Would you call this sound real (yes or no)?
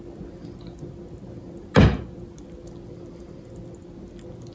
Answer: yes